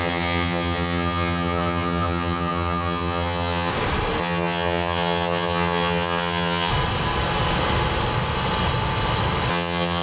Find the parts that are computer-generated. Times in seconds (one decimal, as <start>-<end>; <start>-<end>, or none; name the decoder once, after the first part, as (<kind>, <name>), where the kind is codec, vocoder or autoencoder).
0.0-3.7 (vocoder, HiFi-GAN); 4.2-6.7; 9.5-10.0